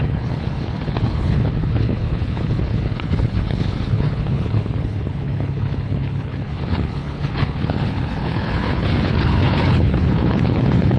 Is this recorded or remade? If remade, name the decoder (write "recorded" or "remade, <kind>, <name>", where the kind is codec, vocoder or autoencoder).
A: remade, codec, HILCodec